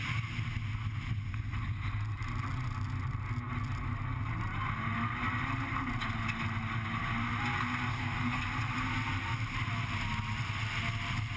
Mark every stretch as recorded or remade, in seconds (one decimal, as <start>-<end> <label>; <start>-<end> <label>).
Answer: 0.0-7.9 recorded; 7.9-8.4 remade; 8.4-11.4 recorded